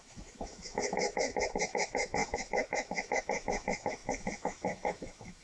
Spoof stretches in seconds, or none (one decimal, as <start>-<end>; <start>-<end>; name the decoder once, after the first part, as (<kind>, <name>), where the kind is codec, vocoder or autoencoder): 0.0-5.4 (autoencoder, DAC-VAE)